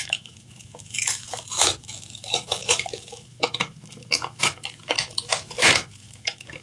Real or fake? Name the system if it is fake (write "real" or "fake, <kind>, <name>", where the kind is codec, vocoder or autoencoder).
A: fake, autoencoder, DAC-VAE